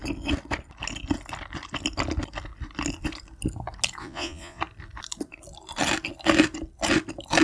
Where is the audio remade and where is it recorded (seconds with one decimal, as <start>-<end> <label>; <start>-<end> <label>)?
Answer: 0.0-4.0 recorded; 4.0-4.6 remade; 4.6-7.4 recorded